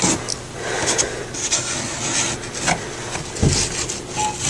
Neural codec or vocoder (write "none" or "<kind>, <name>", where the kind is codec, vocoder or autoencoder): none